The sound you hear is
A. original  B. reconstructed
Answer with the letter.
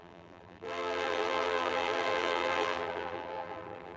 B